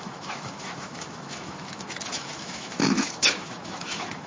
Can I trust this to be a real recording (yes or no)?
no